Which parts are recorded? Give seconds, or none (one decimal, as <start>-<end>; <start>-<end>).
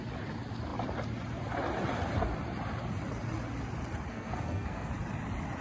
0.0-4.1; 4.9-5.6